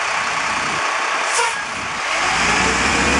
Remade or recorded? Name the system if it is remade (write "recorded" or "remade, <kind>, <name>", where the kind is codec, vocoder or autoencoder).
remade, vocoder, BigVGAN v2